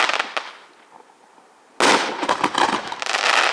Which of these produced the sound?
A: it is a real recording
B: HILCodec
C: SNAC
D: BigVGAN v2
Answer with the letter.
A